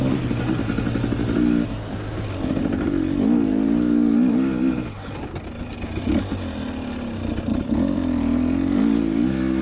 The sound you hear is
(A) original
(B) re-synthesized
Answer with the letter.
A